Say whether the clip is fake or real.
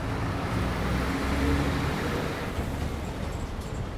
fake